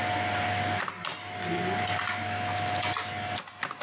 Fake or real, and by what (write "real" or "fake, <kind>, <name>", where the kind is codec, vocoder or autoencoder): real